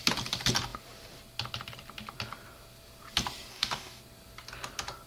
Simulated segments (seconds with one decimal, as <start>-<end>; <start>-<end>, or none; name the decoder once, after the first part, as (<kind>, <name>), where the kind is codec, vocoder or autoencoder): 3.5-4.0 (codec, DAC)